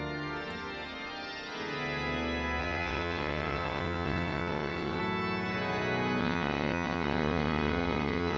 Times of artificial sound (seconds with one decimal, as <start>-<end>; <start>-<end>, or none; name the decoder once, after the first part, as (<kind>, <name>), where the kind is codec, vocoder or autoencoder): 2.6-5.0 (vocoder, WaveNeXt); 6.2-8.4